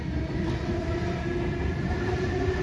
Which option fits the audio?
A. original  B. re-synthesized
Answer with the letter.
A